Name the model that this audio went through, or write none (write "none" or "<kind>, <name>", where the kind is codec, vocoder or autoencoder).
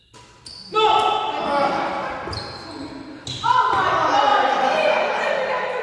none